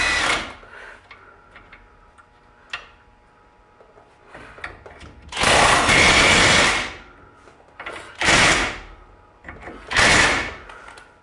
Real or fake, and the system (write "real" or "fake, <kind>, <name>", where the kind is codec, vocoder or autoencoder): real